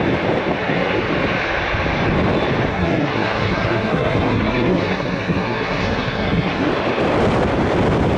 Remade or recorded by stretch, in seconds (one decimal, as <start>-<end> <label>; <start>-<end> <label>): 0.0-0.6 recorded; 0.6-1.1 remade; 1.1-2.7 recorded; 2.7-6.7 remade; 6.7-8.2 recorded